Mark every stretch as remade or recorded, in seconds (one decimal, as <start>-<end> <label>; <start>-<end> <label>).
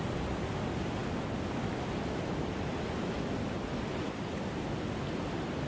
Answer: 0.0-5.7 recorded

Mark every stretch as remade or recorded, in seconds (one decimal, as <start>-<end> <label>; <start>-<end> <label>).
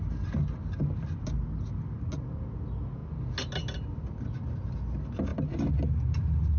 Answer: 0.0-6.6 recorded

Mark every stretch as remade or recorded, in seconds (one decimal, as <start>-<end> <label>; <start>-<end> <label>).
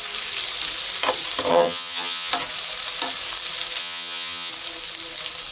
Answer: 0.0-1.5 recorded; 1.5-2.3 remade; 2.3-3.8 recorded; 3.8-4.5 remade; 4.5-5.5 recorded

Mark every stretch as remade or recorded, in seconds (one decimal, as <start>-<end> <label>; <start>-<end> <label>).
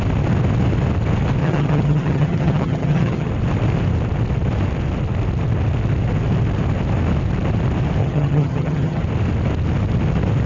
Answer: 0.0-1.4 recorded; 1.4-3.3 remade; 3.3-8.0 recorded; 8.0-9.0 remade; 9.0-10.5 recorded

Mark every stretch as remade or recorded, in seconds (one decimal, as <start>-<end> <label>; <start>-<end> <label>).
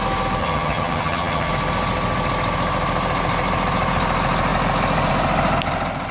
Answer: 0.0-0.4 recorded; 0.4-1.5 remade; 1.5-6.1 recorded